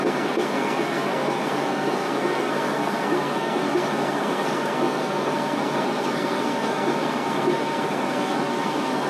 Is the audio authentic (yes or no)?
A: no